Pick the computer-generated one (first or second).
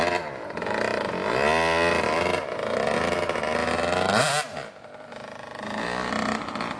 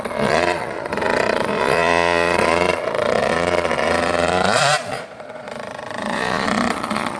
second